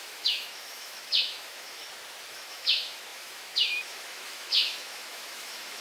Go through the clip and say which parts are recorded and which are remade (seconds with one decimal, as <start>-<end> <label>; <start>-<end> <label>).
0.0-1.8 remade; 1.8-2.3 recorded; 2.3-5.8 remade